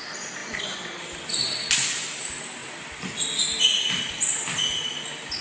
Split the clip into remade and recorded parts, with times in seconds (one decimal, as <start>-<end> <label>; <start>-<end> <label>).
0.0-5.4 recorded